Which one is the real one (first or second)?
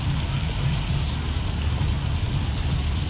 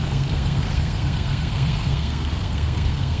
first